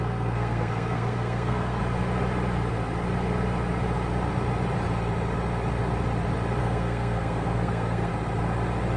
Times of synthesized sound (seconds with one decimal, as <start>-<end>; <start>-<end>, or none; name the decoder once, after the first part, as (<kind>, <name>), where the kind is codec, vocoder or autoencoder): 0.0-1.8 (codec, SNAC); 6.6-8.1